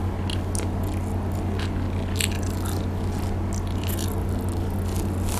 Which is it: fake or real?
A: real